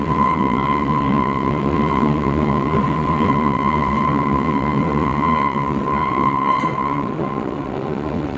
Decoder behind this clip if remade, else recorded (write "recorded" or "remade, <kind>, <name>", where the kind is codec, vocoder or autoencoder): remade, vocoder, WaveNeXt